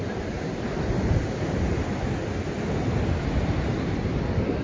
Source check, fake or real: real